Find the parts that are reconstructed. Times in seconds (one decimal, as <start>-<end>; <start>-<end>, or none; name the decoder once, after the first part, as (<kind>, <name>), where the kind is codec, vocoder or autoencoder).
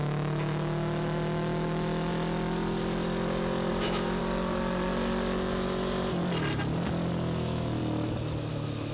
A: 0.0-2.1 (autoencoder, DAC-VAE); 3.7-4.2; 7.1-7.8; 8.5-8.9